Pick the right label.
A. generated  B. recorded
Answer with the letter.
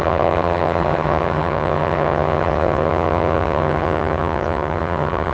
A